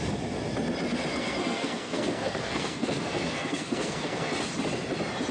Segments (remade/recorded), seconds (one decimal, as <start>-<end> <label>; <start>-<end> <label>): 0.0-1.1 recorded; 1.1-4.3 remade; 4.3-5.3 recorded